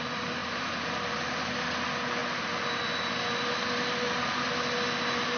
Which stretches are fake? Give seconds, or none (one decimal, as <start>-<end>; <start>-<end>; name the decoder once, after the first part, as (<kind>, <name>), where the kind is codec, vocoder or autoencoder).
0.4-1.4 (vocoder, BigVGAN v2)